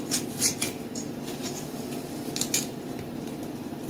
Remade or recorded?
remade